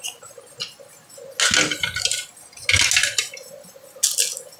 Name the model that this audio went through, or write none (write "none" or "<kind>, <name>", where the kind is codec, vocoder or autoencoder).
none